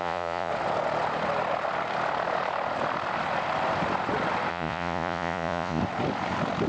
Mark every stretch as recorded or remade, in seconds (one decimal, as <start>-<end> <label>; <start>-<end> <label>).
0.0-0.5 remade; 0.5-4.5 recorded; 4.5-5.8 remade; 5.8-6.7 recorded